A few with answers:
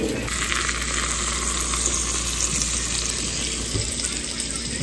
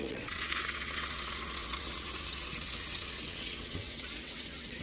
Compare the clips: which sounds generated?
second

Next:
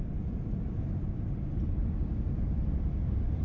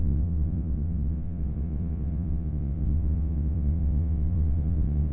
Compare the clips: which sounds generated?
second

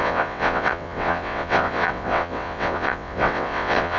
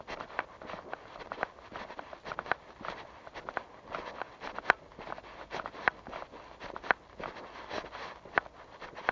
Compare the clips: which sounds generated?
first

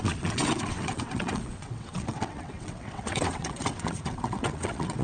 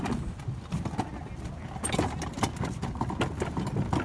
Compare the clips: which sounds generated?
first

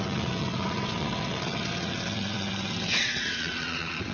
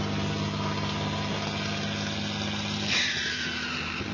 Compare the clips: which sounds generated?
first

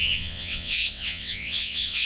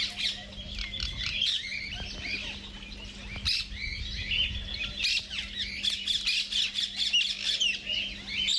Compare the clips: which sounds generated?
first